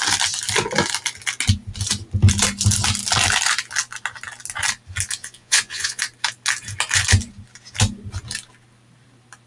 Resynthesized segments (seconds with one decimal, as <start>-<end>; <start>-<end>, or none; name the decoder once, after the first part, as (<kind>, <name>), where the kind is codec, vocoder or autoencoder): 5.2-6.0 (vocoder, Vocos)